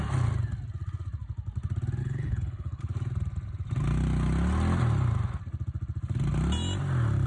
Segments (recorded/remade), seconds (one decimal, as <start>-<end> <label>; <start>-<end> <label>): 0.0-2.0 recorded; 2.0-2.8 remade; 2.8-7.3 recorded